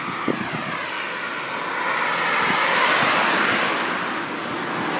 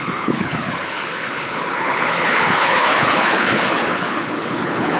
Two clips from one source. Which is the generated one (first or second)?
second